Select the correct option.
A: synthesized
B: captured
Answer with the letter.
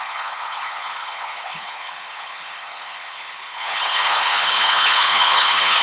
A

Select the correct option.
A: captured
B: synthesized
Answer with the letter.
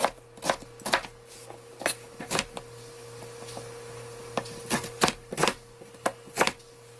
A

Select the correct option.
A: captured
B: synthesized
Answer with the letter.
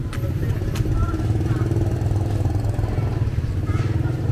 A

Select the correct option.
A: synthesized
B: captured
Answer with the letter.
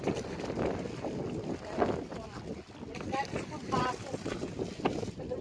B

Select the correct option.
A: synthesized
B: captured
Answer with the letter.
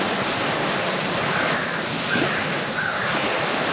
B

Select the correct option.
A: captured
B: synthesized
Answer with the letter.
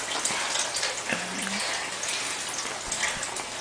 A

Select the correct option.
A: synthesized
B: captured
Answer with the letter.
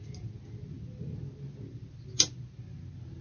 B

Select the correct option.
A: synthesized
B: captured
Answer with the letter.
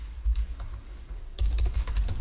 A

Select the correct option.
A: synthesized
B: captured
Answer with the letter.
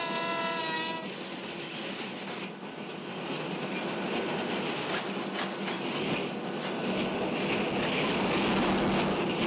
B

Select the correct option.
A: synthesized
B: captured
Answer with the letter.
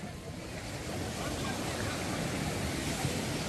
B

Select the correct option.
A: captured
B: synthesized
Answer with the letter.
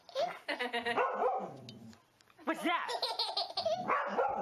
A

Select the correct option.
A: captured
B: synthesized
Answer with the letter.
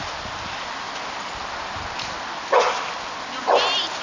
A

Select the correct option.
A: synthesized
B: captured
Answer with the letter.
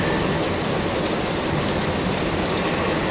B